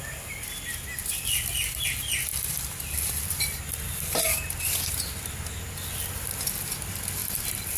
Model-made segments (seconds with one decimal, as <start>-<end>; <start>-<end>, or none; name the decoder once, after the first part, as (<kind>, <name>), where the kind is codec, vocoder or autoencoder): 1.0-1.8 (vocoder, BigVGAN v2); 2.3-3.6